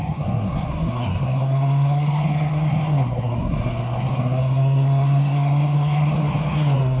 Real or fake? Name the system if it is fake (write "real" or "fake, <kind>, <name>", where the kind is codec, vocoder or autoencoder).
fake, codec, SNAC